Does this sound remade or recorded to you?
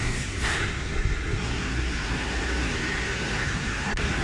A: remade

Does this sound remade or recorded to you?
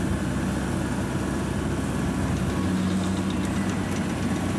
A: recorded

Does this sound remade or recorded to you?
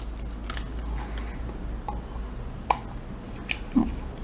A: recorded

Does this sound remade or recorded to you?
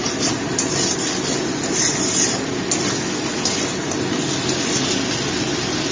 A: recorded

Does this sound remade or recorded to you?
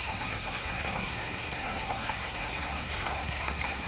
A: remade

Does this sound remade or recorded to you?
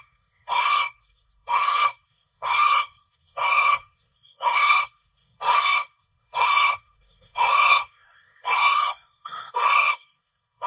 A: remade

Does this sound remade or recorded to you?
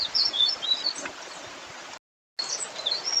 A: recorded